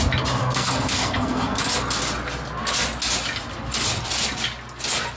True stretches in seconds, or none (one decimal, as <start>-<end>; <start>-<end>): 0.0-0.4; 1.6-5.2